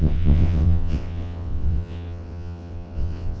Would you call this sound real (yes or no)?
no